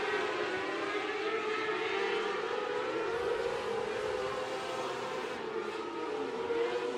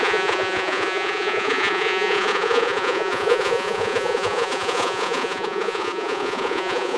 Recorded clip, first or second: first